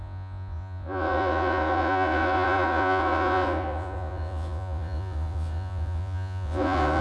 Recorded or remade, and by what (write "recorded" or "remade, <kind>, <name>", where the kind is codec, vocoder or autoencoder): remade, vocoder, Vocos